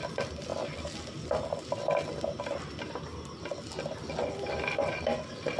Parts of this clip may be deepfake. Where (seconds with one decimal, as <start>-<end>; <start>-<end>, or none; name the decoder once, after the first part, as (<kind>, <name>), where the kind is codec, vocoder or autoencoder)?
none